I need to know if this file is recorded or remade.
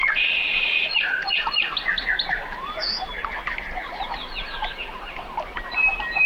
recorded